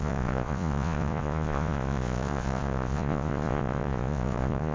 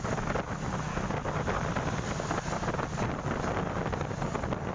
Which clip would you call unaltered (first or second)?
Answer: second